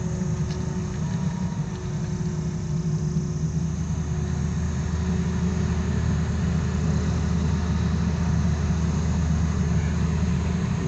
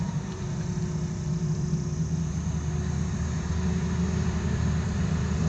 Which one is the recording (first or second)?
first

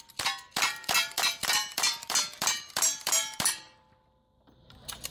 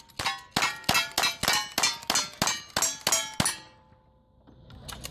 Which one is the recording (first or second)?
second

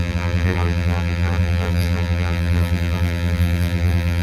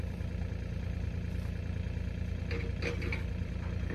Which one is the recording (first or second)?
second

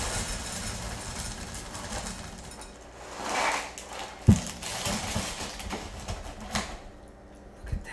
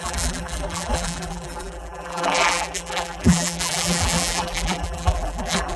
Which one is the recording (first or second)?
first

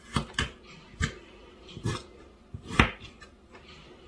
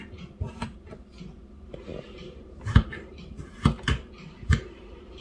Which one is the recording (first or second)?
first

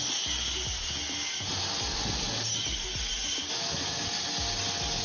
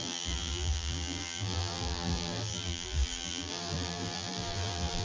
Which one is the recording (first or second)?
first